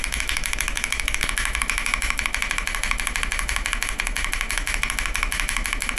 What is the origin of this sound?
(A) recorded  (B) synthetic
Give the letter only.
B